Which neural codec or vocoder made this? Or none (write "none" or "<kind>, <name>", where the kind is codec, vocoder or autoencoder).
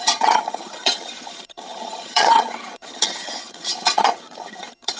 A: vocoder, HiFi-GAN